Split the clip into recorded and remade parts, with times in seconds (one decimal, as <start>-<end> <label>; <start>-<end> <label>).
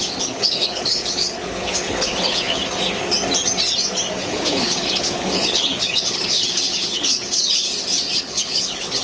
0.0-2.6 remade; 2.6-4.2 recorded; 4.2-7.7 remade; 7.7-8.2 recorded; 8.2-9.0 remade